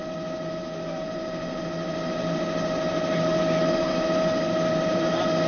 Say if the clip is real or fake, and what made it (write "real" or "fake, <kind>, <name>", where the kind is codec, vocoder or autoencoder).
real